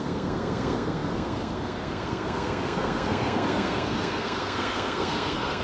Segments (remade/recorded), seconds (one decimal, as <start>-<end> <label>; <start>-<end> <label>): 0.0-5.6 remade